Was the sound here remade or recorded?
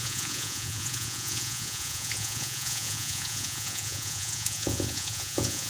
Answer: remade